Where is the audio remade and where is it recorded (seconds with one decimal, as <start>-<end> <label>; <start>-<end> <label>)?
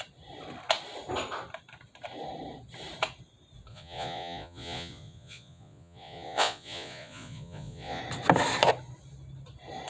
0.0-3.7 recorded; 3.7-8.0 remade; 8.0-9.9 recorded